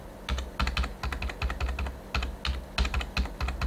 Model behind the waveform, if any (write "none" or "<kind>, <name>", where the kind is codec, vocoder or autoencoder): none